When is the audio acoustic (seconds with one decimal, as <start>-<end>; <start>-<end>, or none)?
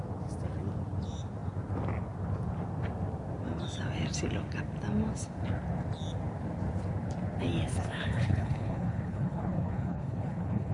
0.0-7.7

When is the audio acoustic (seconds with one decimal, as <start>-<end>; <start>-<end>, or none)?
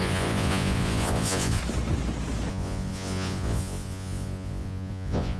1.6-2.5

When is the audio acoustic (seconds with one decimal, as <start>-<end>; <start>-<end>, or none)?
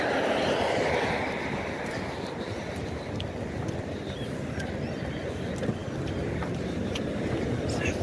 0.0-8.0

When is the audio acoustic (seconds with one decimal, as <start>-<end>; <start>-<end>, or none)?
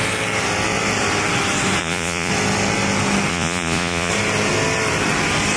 0.0-1.8; 2.3-3.3; 4.1-5.6